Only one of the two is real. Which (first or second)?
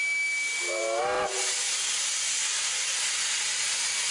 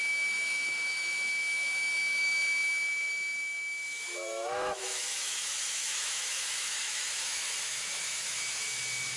first